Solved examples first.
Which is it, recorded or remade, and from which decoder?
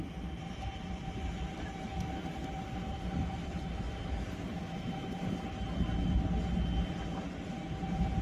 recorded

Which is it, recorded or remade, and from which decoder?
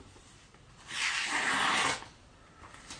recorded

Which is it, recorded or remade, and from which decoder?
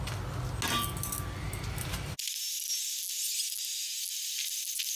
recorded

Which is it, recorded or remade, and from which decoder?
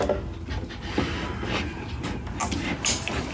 recorded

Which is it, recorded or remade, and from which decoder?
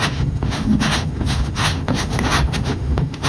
remade, autoencoder, DAC-VAE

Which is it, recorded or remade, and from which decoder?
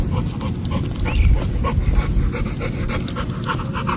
recorded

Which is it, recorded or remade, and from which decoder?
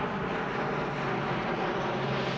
recorded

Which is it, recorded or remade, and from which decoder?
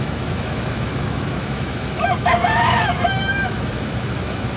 remade, autoencoder, DAC-VAE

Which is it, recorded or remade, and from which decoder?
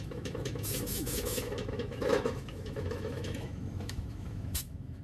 remade, autoencoder, DAC-VAE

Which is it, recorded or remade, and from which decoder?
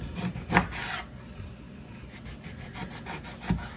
recorded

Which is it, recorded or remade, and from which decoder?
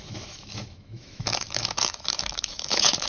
remade, autoencoder, DAC-VAE